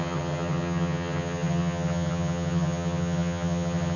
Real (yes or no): no